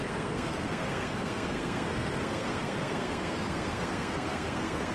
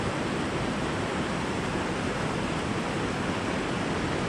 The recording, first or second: second